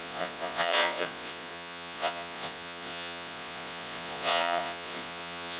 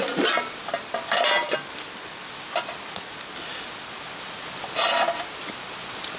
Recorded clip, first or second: second